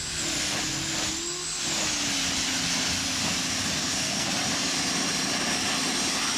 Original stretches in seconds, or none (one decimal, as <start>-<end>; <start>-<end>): 0.0-3.8; 4.3-6.4